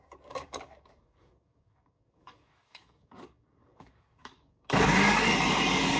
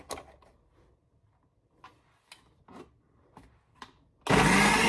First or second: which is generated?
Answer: first